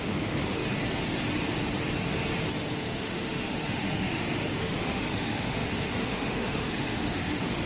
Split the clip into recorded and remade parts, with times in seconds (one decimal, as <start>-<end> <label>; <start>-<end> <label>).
0.0-0.6 remade; 0.6-2.8 recorded; 2.8-7.7 remade